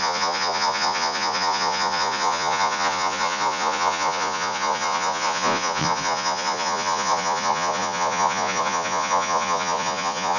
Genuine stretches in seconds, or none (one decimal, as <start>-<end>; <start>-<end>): none